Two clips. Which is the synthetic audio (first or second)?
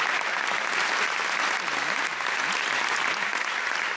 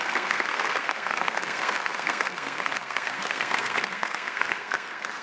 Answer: second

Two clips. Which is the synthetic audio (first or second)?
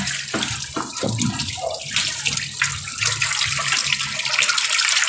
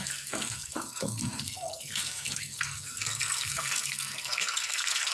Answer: second